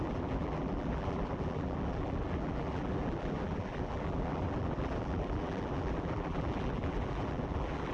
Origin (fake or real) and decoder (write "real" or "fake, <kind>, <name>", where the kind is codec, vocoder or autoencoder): fake, vocoder, BigVGAN v2